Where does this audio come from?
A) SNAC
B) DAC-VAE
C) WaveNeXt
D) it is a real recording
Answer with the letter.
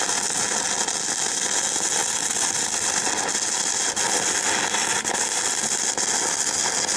D